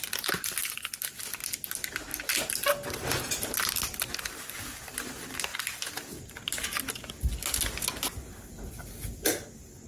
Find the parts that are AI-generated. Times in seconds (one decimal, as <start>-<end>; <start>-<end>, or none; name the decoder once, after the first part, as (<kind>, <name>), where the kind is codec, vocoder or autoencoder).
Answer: none